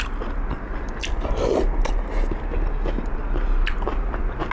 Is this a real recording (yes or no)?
yes